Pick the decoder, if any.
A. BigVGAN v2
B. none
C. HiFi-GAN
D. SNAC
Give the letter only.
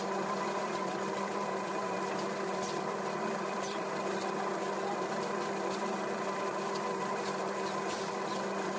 A